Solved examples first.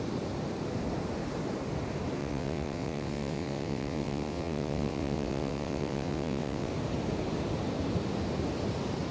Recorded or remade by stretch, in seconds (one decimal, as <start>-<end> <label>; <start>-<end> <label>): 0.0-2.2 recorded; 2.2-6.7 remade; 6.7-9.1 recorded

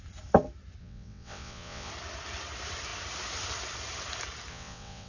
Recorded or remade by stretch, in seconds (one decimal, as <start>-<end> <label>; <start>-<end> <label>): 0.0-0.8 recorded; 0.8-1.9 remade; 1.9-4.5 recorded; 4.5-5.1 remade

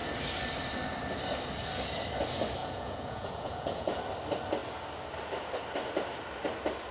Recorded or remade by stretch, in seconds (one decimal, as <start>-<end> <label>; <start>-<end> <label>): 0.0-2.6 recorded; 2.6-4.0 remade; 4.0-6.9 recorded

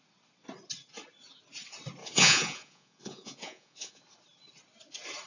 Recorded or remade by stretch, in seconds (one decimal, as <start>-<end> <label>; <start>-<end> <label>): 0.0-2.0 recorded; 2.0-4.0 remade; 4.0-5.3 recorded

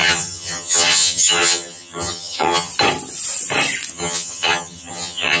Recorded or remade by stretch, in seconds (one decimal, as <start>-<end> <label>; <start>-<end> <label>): 0.0-2.7 remade; 2.7-3.9 recorded; 3.9-5.4 remade